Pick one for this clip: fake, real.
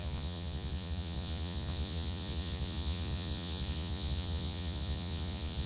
fake